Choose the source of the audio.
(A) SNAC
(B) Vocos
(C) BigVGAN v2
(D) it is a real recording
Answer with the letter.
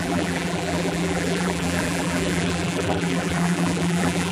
C